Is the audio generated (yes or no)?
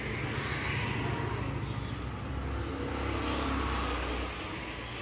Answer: no